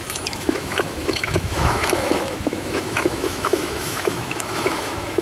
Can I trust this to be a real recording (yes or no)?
no